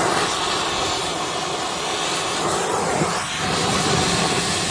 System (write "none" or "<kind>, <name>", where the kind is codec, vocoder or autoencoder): none